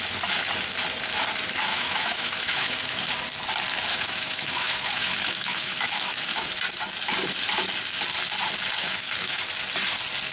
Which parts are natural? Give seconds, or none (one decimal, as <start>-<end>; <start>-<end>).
0.0-1.7; 3.1-3.9; 6.5-8.8; 9.4-10.3